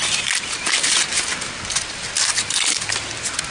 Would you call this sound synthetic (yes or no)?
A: no